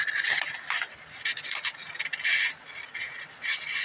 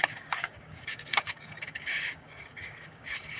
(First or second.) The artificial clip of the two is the second